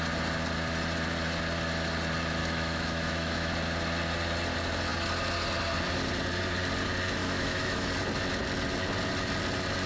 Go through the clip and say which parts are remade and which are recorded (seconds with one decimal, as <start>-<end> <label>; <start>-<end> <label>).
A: 0.0-2.4 recorded; 2.4-3.5 remade; 3.5-7.2 recorded; 7.2-7.9 remade; 7.9-9.9 recorded